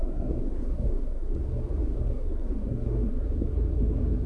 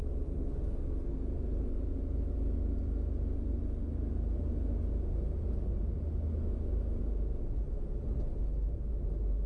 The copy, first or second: first